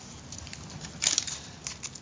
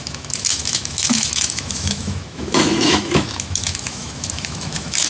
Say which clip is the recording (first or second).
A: first